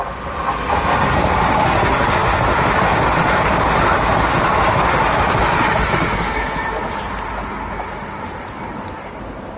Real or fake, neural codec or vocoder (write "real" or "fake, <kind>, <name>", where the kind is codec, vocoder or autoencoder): real